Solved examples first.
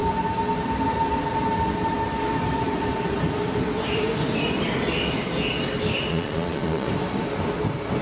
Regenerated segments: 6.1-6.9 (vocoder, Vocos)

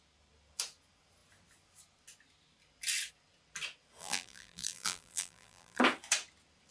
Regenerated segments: 4.0-5.8 (vocoder, BigVGAN v2)